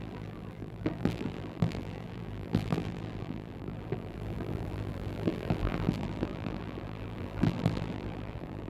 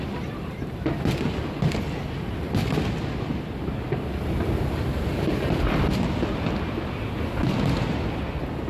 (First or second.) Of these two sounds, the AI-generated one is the first